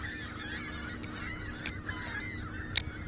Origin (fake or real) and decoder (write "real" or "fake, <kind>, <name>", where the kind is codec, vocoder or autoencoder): real